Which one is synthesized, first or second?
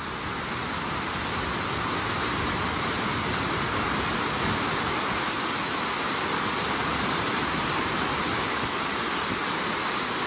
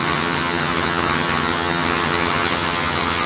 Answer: second